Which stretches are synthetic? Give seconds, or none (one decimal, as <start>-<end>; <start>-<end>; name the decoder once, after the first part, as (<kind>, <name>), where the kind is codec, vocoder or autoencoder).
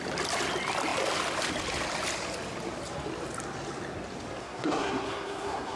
4.4-5.8 (codec, SNAC)